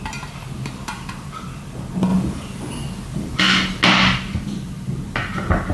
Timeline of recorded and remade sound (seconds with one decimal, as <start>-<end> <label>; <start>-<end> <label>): 0.0-5.7 recorded